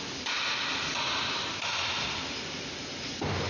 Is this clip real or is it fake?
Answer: real